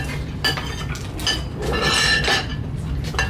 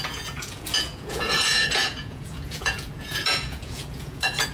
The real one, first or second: first